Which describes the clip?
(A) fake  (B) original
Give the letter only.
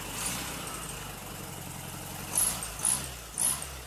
B